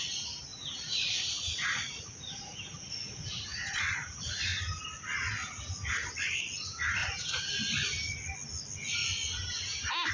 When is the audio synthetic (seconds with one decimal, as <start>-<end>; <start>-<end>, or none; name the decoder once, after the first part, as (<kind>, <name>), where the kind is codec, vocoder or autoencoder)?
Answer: 0.5-4.6 (vocoder, Vocos); 5.4-6.1; 7.0-7.5